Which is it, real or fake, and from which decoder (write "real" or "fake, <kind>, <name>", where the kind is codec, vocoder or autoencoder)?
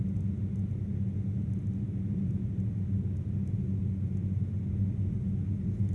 real